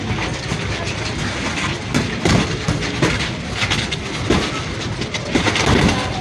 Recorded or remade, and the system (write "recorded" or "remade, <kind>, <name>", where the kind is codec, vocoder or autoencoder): recorded